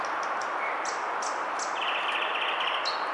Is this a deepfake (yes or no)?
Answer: no